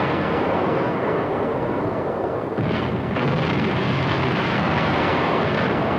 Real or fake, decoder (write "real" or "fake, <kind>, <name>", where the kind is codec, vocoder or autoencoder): fake, codec, SNAC